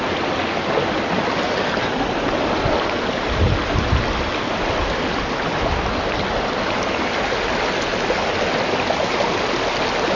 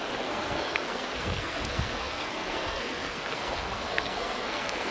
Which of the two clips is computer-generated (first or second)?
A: second